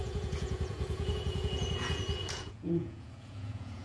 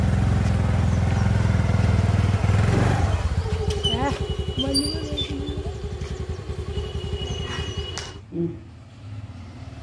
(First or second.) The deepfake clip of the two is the first